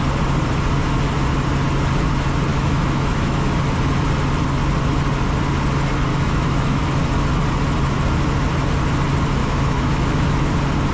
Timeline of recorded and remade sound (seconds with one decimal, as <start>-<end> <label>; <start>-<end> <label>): 0.0-2.5 recorded; 2.5-3.6 remade; 3.6-6.1 recorded; 6.1-6.8 remade; 6.8-9.4 recorded; 9.4-10.5 remade; 10.5-10.9 recorded